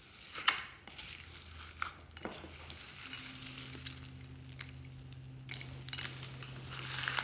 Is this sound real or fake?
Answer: real